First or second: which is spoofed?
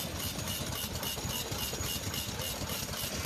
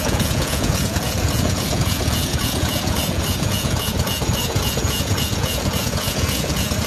second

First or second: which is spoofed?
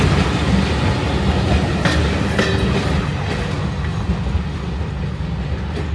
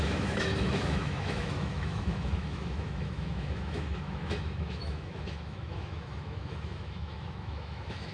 second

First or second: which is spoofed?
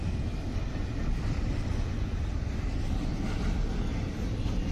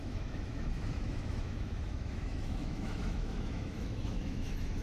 second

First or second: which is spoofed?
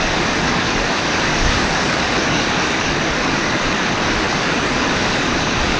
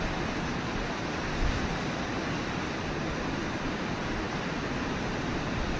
first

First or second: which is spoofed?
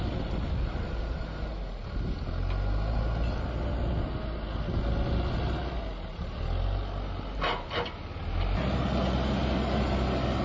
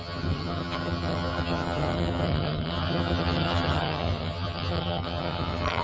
second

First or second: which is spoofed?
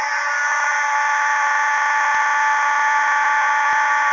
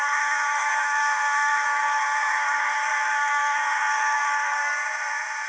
second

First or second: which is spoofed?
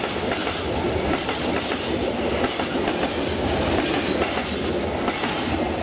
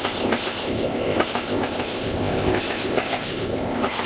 second